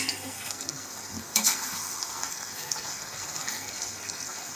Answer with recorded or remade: remade